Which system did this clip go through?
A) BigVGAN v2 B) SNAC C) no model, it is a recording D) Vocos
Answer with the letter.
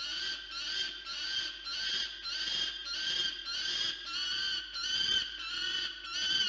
C